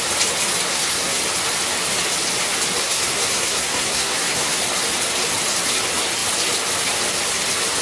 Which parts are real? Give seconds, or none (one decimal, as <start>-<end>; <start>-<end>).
0.0-0.7; 1.2-2.8; 4.6-7.8